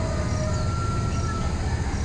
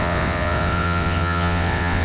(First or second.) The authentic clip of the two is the first